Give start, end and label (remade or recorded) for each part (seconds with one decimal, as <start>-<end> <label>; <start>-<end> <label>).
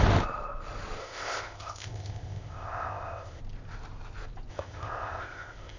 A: 0.0-1.0 recorded; 1.0-3.4 remade; 3.4-4.5 recorded; 4.5-5.8 remade